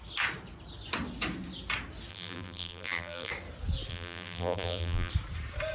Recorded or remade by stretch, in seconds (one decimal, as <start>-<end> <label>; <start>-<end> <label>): 0.0-2.1 recorded; 2.1-3.3 remade; 3.3-3.9 recorded; 3.9-5.1 remade; 5.1-5.7 recorded